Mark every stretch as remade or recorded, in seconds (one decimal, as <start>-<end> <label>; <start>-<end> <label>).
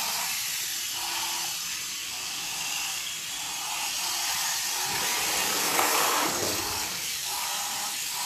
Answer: 0.0-2.0 recorded; 2.0-3.1 remade; 3.1-5.4 recorded; 5.4-7.5 remade; 7.5-8.3 recorded